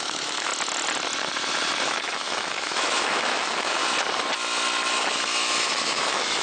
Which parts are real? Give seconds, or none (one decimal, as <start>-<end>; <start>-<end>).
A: 0.5-1.8; 3.8-4.9